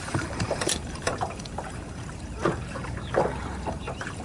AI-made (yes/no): yes